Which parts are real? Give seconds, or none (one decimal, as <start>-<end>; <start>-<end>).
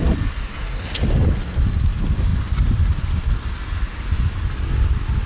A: 0.0-0.4; 1.0-5.3